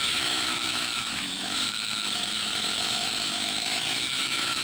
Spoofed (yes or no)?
yes